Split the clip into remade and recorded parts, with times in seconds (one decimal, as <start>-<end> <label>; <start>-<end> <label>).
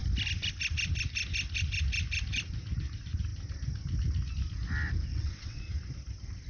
0.0-5.1 recorded; 5.1-5.6 remade; 5.6-6.5 recorded